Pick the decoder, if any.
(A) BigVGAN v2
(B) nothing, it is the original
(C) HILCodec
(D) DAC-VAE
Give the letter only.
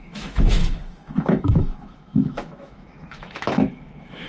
D